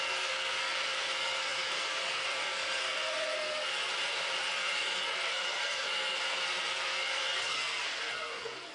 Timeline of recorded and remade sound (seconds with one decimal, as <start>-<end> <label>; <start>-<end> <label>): 0.0-3.9 remade; 3.9-4.4 recorded; 4.4-8.7 remade